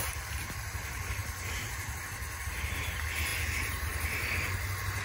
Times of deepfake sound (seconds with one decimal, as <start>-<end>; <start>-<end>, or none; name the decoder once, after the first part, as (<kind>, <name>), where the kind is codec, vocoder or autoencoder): none